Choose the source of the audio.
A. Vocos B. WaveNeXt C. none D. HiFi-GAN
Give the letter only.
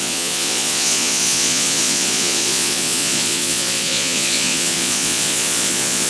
A